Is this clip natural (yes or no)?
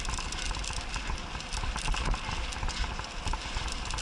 yes